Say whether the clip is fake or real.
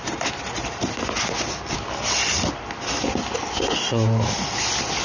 real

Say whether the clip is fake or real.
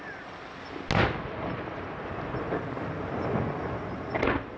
real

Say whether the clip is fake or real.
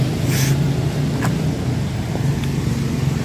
real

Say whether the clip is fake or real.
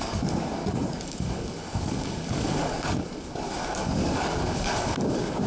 fake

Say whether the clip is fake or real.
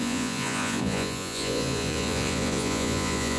fake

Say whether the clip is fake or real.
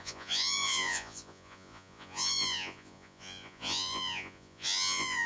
fake